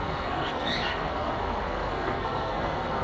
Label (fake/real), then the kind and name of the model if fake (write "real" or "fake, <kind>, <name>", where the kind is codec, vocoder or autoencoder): fake, codec, SNAC